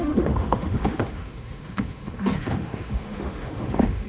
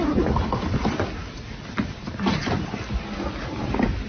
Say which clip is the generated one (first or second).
first